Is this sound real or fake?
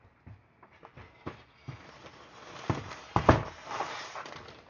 real